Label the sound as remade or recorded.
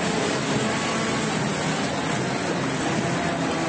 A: recorded